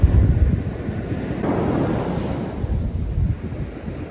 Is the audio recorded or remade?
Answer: recorded